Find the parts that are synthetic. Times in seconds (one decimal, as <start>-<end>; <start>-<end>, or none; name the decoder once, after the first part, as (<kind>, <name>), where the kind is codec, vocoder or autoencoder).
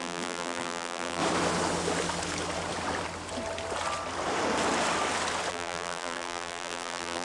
0.0-1.2 (vocoder, BigVGAN v2); 5.5-7.2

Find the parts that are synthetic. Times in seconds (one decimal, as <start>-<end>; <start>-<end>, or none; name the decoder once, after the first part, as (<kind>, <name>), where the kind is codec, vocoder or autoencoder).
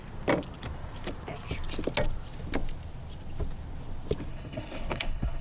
4.3-5.4 (codec, HILCodec)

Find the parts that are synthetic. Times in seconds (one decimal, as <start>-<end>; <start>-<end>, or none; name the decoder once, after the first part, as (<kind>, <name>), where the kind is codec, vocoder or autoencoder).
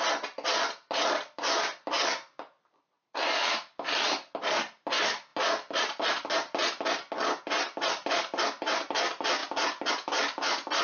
none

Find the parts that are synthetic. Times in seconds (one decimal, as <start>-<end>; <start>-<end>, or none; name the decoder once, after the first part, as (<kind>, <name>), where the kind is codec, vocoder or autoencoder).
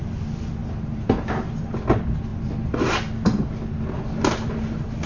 0.6-1.4 (vocoder, BigVGAN v2)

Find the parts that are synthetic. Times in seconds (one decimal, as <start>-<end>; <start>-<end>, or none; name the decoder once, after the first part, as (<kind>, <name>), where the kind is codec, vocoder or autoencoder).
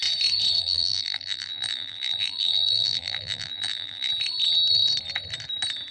0.6-4.1 (vocoder, BigVGAN v2)